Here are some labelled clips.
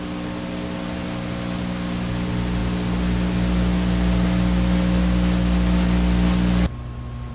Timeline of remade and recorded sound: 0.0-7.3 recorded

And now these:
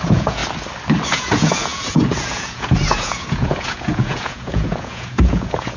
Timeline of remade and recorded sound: 0.0-0.4 remade; 0.4-1.1 recorded; 1.1-5.8 remade

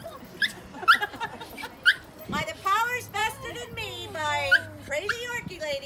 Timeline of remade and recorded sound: 0.0-5.9 recorded

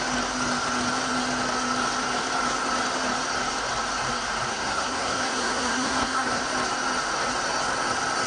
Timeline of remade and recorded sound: 0.0-4.5 recorded; 4.5-6.4 remade; 6.4-8.3 recorded

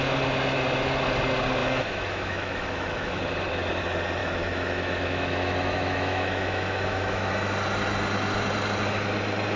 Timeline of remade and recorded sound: 0.0-1.6 recorded; 1.6-3.2 remade; 3.2-4.2 recorded; 4.2-7.3 remade; 7.3-9.6 recorded